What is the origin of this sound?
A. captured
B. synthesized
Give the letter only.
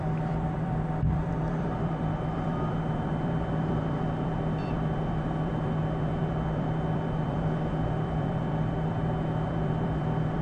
B